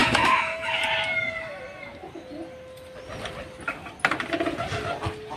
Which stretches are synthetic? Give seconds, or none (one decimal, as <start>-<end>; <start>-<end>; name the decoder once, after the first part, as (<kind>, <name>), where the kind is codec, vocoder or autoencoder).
0.0-0.8 (autoencoder, DAC-VAE)